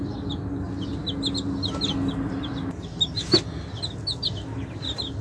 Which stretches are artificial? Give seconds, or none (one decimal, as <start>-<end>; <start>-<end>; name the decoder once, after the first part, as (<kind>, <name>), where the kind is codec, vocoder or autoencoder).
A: none